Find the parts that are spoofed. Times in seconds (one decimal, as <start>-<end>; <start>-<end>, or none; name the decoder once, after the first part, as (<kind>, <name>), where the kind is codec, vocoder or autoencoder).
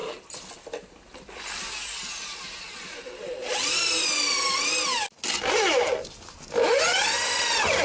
0.0-4.7 (vocoder, BigVGAN v2)